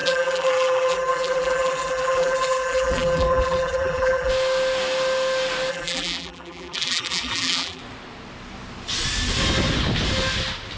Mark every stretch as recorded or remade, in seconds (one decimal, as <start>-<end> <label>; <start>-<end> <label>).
0.0-4.3 remade; 4.3-5.7 recorded; 5.7-7.8 remade; 7.8-10.8 recorded